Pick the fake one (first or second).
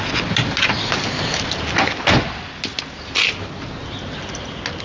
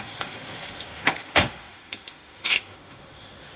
second